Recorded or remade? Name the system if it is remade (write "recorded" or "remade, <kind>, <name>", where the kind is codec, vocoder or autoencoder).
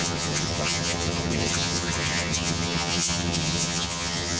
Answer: remade, vocoder, HiFi-GAN